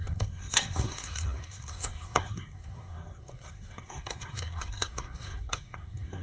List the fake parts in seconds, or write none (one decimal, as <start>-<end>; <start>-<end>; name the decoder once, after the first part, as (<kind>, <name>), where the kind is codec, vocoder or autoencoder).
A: 0.0-6.2 (codec, SNAC)